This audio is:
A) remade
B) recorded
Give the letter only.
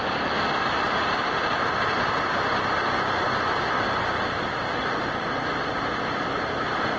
B